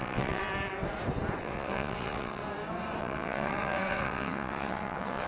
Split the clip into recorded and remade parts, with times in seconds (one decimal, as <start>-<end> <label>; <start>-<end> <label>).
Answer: 0.0-0.4 remade; 0.4-1.4 recorded; 1.4-2.4 remade; 2.4-3.0 recorded; 3.0-5.3 remade